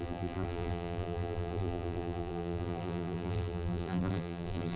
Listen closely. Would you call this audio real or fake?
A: fake